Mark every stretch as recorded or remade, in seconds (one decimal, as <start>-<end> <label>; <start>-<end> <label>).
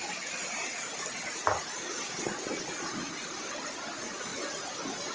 0.0-5.1 recorded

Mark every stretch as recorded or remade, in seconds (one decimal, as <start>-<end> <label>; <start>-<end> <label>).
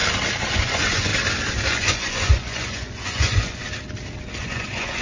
0.0-0.5 recorded; 0.5-1.1 remade; 1.1-1.7 recorded; 1.7-3.6 remade; 3.6-4.4 recorded; 4.4-5.0 remade